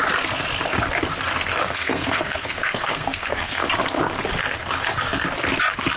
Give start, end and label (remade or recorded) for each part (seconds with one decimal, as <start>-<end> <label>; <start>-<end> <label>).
0.0-1.6 recorded; 1.6-3.6 remade; 3.6-6.0 recorded